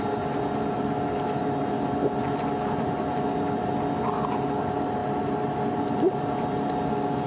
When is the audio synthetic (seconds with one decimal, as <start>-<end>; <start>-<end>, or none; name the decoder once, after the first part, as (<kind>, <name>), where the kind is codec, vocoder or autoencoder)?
none